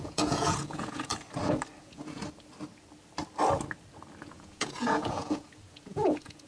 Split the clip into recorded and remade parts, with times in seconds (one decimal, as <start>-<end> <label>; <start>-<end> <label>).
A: 0.0-1.1 remade; 1.1-1.8 recorded; 1.8-2.2 remade; 2.2-4.2 recorded; 4.2-6.5 remade